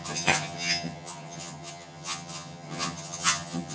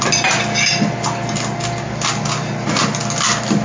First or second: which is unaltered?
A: second